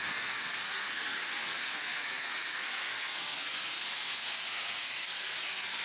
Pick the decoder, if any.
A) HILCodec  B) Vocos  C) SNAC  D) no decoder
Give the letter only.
C